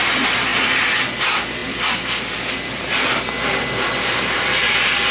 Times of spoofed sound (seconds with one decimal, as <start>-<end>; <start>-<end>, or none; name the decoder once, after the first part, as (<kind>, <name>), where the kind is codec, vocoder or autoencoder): none